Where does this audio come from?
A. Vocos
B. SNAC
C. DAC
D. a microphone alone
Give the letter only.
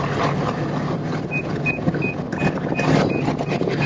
D